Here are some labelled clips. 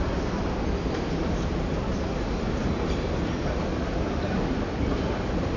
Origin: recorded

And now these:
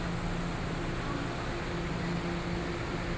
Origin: recorded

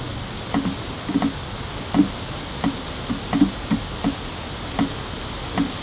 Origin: recorded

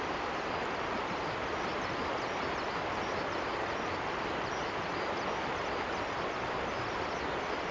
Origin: recorded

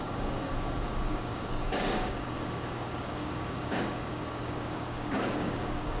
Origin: remade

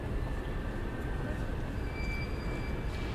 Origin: recorded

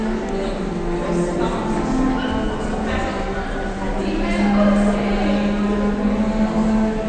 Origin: recorded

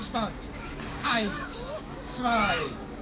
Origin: remade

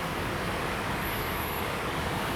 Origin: remade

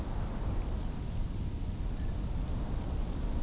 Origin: recorded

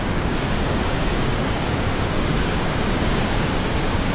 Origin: remade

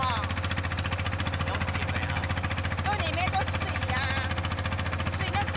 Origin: recorded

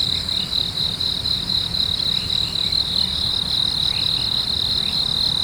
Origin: recorded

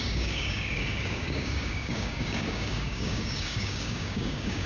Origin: remade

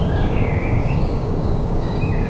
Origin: remade